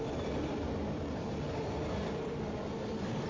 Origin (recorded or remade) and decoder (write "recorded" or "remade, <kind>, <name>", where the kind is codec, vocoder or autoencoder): recorded